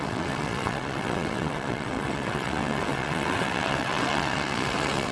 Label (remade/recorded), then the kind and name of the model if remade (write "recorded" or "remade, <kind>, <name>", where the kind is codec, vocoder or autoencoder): remade, vocoder, WaveNeXt